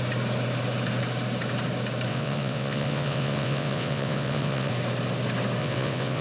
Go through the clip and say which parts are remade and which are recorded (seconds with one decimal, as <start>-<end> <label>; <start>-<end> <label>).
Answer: 0.0-2.1 recorded; 2.1-4.7 remade; 4.7-5.6 recorded; 5.6-6.2 remade